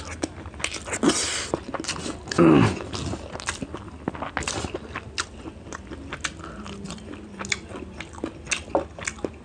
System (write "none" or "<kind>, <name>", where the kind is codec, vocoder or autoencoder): none